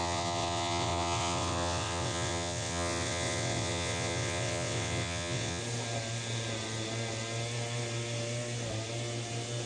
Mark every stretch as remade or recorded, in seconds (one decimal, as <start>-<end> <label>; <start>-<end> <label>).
0.0-5.6 remade; 5.6-9.7 recorded